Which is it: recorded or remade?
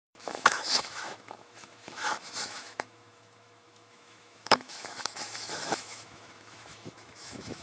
remade